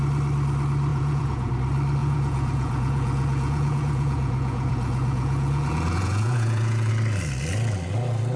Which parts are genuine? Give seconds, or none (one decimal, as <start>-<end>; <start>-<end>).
0.0-0.9; 1.5-2.0; 6.9-8.4